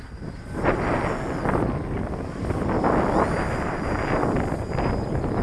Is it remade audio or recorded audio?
recorded